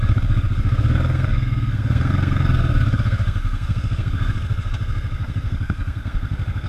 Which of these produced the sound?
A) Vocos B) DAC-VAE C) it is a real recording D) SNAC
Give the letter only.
D